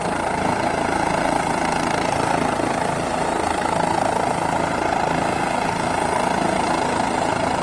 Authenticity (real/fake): real